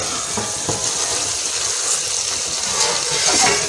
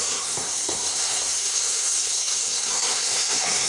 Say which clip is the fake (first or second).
second